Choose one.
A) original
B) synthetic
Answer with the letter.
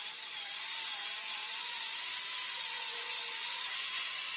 B